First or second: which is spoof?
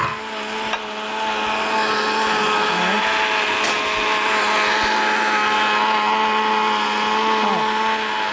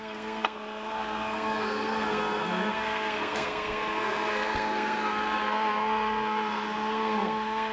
second